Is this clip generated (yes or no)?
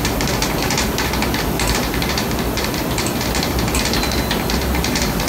no